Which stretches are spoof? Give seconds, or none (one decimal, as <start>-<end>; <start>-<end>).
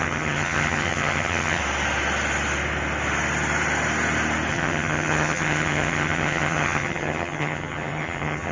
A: 0.0-1.6; 4.5-8.5